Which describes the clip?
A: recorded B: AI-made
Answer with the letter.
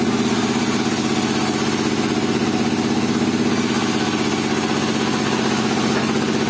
A